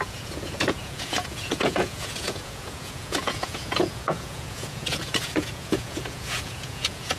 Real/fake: fake